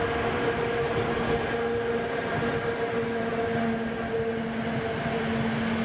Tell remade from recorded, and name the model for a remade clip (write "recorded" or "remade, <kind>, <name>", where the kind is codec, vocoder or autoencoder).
recorded